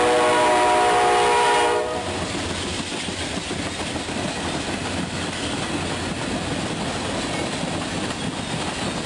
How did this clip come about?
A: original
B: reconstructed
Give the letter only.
A